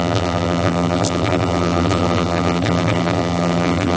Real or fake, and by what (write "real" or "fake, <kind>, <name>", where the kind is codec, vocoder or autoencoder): fake, vocoder, BigVGAN v2